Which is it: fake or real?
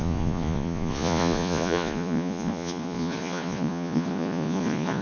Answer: fake